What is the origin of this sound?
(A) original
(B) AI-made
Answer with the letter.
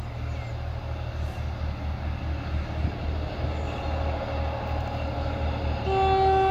A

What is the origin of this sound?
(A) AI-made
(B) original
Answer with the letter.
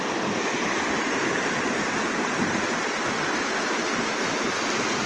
B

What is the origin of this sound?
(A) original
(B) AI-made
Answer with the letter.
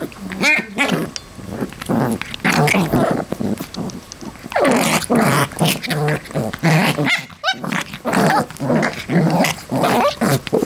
A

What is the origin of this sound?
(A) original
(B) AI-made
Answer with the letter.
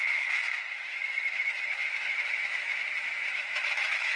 B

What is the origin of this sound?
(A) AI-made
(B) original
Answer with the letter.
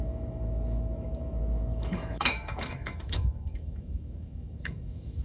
A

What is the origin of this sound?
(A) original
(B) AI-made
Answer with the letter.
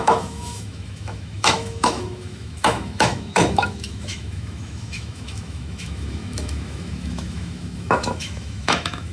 B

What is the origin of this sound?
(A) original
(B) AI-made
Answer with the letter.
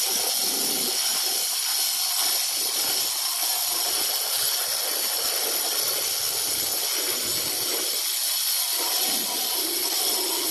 A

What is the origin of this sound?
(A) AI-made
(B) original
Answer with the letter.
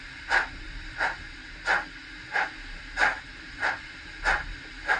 B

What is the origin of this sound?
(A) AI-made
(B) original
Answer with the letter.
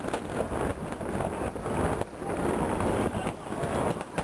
B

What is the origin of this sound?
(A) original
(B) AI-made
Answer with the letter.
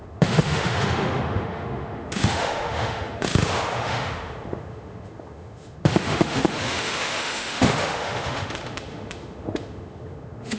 B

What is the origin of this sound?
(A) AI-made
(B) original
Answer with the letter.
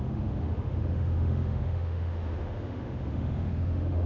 A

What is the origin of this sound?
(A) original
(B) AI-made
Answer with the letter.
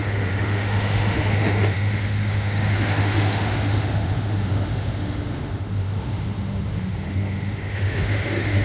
B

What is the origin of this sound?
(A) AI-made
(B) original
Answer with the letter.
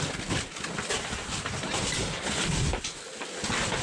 B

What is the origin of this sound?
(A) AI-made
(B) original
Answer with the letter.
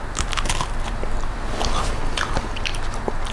B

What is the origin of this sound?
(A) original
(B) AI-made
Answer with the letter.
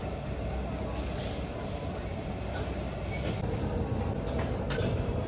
A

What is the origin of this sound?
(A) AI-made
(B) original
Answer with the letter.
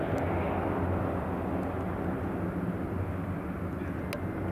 B